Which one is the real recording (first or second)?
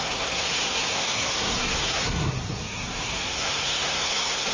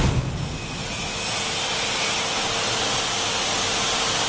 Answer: second